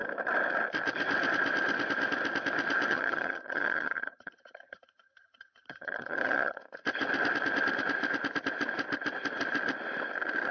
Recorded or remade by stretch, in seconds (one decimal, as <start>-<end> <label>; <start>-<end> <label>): 0.0-2.9 recorded; 2.9-6.6 remade; 6.6-10.5 recorded